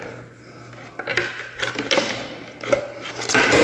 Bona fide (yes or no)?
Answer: yes